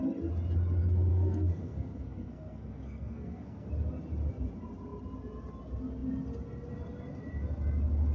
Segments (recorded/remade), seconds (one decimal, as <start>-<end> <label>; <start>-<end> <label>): 0.0-1.1 recorded; 1.1-3.7 remade; 3.7-8.1 recorded